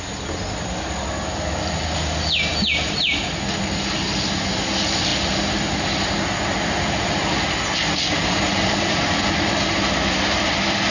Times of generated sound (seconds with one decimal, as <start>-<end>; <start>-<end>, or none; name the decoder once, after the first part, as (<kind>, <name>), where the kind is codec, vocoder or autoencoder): none

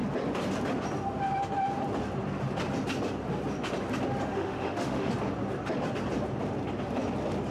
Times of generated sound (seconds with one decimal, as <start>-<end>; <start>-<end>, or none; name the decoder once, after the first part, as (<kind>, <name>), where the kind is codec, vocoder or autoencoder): 4.3-5.1 (autoencoder, DAC-VAE)

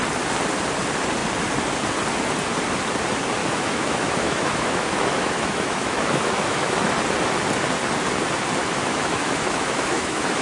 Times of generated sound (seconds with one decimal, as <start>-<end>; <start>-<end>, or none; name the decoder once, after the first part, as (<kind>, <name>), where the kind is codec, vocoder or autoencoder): 3.4-6.9 (autoencoder, DAC-VAE); 8.6-10.4

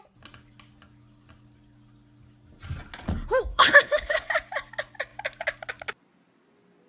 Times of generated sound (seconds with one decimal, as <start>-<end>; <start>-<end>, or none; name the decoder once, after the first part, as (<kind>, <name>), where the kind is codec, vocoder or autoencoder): 3.5-4.3 (codec, HILCodec)

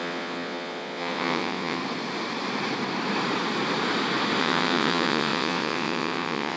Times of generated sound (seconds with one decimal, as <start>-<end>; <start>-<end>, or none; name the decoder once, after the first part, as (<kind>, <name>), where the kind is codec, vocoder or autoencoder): 0.0-1.8 (vocoder, WaveNeXt); 4.4-6.6